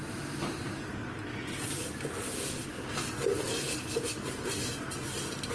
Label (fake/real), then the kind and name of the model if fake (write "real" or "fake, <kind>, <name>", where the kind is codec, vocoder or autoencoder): real